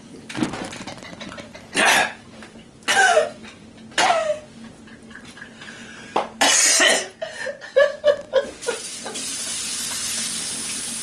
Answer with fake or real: fake